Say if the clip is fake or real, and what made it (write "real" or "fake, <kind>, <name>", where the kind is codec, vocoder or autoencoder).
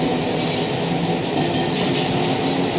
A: real